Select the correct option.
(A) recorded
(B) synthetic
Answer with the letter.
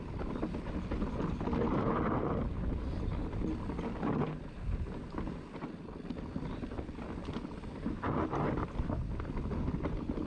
A